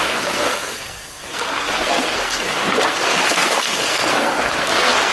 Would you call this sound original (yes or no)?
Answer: no